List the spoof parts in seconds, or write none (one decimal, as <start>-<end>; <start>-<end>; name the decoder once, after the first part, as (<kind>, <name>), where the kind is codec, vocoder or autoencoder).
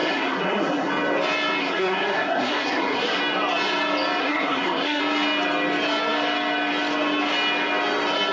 0.0-0.9 (codec, SNAC); 1.6-3.2; 4.2-5.0